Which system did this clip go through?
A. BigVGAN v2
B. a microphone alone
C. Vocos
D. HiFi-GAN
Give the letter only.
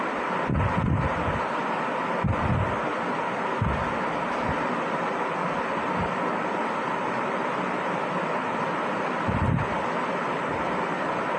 B